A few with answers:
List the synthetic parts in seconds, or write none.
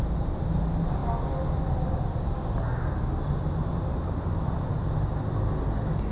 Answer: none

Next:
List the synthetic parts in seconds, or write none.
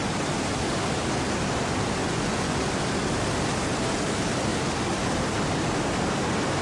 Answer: 2.0-2.7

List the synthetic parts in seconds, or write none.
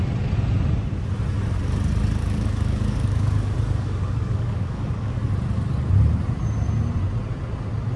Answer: 2.2-5.3